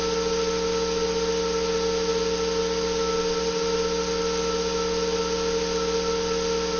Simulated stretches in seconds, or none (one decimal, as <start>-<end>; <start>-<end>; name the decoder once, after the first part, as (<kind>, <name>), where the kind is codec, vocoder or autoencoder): none